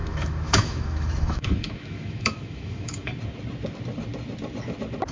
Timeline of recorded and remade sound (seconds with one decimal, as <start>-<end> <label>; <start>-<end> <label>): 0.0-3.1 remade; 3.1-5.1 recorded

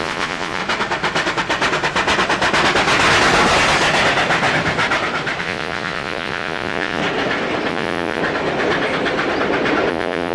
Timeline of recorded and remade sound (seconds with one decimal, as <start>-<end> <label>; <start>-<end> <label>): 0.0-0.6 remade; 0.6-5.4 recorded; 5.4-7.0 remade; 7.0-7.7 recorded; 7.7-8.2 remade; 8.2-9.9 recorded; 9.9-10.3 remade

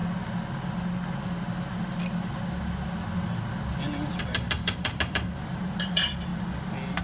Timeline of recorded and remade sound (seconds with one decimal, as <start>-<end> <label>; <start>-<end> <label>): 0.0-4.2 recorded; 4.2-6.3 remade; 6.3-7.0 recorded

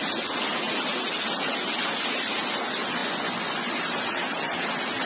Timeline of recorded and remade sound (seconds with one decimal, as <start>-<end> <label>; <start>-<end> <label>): 0.0-3.0 recorded; 3.0-3.7 remade; 3.7-5.1 recorded

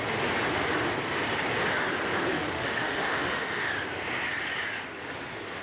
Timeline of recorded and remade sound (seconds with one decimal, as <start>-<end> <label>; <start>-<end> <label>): 0.0-2.3 recorded; 2.3-3.7 remade; 3.7-5.6 recorded